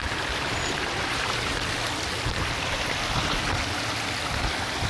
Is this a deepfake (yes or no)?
no